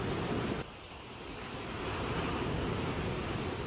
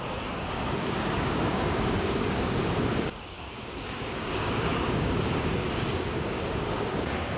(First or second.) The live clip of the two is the first